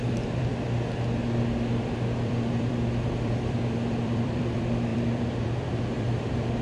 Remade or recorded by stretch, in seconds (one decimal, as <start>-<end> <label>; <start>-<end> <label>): 0.0-0.5 remade; 0.5-1.8 recorded; 1.8-6.6 remade